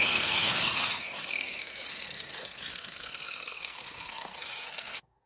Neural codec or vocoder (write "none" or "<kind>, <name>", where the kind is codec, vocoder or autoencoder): codec, SNAC